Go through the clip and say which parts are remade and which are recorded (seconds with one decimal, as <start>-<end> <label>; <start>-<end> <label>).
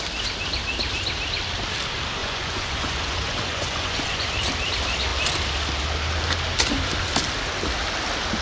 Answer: 0.0-2.2 recorded; 2.2-4.3 remade; 4.3-8.4 recorded